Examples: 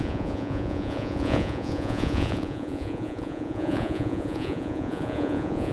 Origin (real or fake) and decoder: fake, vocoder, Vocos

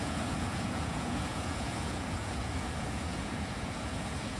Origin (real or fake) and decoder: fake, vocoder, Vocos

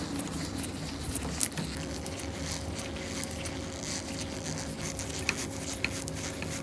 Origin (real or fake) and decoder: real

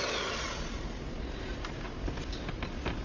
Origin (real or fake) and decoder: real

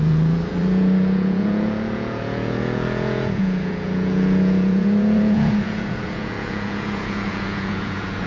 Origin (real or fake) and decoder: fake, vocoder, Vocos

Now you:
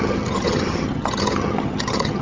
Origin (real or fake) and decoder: fake, vocoder, HiFi-GAN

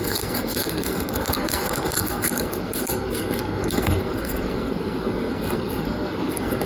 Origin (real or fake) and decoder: fake, codec, SNAC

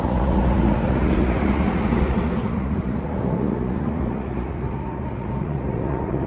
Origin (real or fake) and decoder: fake, vocoder, Vocos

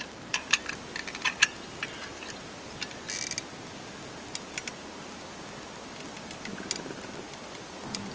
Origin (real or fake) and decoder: real